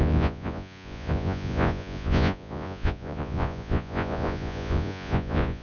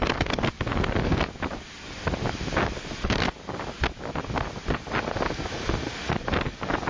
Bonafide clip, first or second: second